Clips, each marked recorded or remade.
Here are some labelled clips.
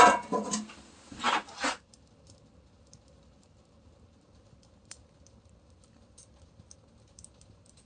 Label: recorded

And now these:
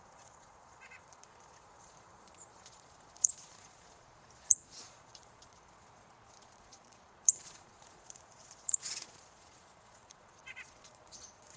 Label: remade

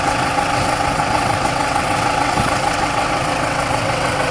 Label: remade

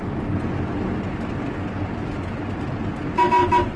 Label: recorded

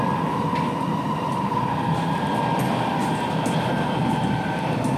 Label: recorded